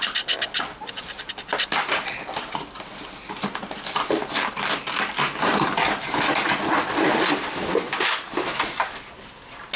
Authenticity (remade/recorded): recorded